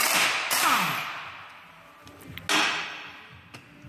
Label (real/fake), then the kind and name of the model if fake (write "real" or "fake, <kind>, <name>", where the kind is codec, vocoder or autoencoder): real